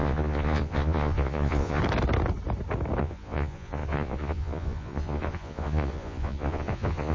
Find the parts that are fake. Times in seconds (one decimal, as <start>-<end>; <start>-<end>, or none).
0.0-1.8; 3.0-7.1